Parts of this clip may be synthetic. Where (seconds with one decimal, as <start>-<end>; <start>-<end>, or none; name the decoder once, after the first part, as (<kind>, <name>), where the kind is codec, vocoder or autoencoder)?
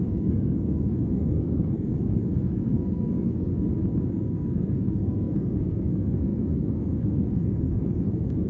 0.0-3.5 (codec, SNAC); 4.1-8.5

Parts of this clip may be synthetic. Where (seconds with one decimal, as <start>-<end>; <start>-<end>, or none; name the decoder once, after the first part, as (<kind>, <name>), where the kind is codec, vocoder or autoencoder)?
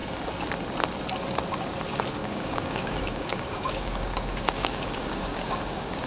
2.2-6.1 (codec, DAC)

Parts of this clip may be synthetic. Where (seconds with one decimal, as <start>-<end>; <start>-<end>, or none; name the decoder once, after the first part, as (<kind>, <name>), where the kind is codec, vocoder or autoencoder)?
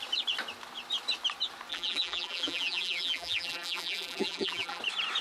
1.7-4.8 (vocoder, BigVGAN v2)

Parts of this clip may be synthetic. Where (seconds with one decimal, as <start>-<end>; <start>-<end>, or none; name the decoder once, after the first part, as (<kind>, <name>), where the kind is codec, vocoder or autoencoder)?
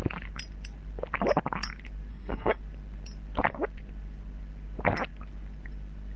2.1-2.6 (codec, SNAC)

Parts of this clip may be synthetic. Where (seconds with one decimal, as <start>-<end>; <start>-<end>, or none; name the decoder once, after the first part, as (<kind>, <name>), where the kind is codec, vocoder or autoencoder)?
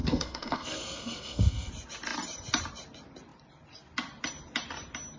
0.0-1.7 (codec, SNAC)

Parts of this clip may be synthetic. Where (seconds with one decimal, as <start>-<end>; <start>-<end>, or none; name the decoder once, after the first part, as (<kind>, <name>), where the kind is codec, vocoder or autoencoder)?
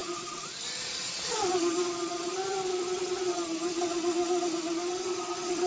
0.0-1.5 (vocoder, WaveNeXt); 4.9-5.7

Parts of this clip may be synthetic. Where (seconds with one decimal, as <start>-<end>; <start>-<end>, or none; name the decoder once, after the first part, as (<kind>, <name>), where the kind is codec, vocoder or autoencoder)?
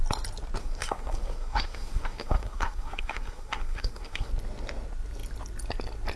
0.6-4.3 (codec, SNAC)